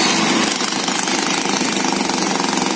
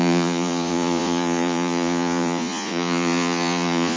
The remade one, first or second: second